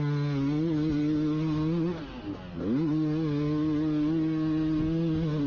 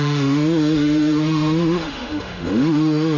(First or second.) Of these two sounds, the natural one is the first